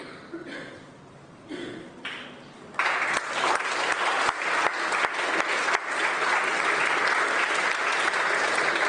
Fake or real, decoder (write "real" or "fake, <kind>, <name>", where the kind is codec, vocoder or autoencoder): real